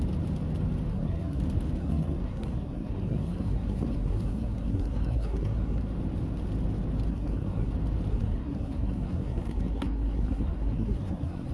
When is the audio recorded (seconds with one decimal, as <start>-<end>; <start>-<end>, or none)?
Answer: 0.0-0.9; 1.4-1.8; 5.8-7.1; 7.7-8.1